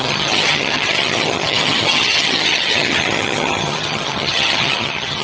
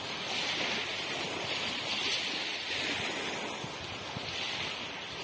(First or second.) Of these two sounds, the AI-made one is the first